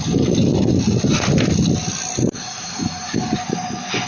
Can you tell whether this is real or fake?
real